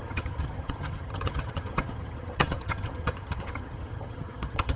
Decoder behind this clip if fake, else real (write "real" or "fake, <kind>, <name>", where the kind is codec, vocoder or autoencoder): fake, vocoder, HiFi-GAN